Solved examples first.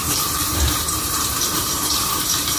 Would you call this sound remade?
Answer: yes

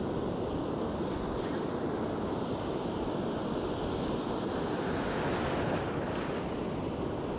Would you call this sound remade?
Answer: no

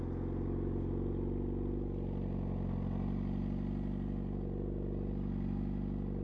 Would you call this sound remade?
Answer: no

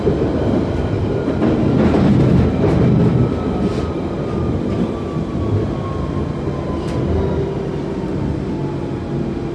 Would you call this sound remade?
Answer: no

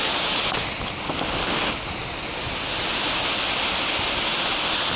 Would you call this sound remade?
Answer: no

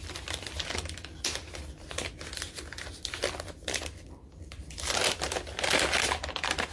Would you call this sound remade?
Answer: no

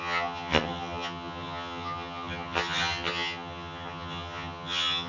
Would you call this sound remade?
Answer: yes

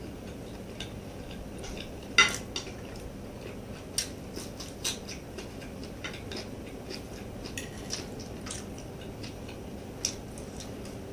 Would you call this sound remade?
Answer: no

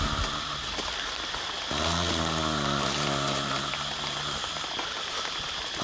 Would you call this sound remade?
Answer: no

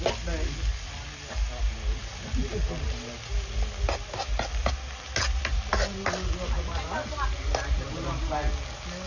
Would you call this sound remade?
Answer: no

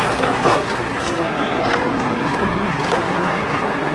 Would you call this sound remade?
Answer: yes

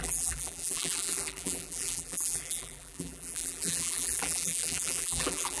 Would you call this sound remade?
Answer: yes